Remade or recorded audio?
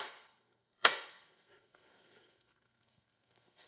remade